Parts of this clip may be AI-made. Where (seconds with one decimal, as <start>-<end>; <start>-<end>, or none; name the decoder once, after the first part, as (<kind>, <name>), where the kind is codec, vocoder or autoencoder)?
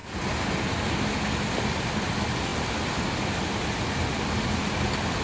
none